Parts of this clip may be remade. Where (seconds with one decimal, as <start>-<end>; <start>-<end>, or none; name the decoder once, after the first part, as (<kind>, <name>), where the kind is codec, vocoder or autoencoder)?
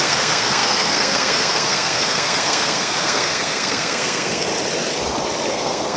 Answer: 0.0-4.5 (codec, SNAC); 5.5-6.0